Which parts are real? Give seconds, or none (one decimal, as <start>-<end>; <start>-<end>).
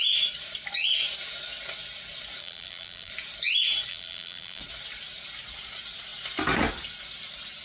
0.0-2.4; 3.1-3.9; 4.6-7.6